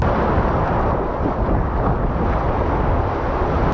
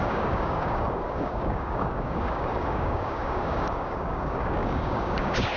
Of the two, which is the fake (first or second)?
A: second